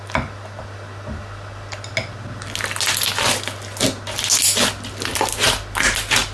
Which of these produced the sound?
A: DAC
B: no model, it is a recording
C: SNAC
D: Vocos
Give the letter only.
B